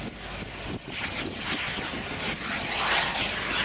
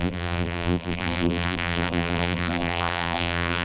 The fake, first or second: second